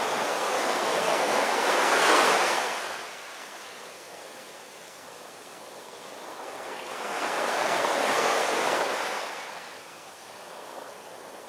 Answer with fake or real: fake